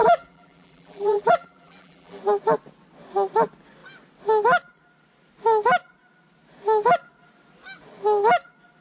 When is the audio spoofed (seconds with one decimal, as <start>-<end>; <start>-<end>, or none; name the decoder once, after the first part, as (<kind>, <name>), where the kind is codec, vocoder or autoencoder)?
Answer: 0.0-2.2 (vocoder, BigVGAN v2)